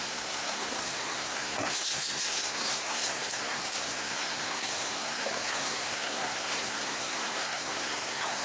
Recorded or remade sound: remade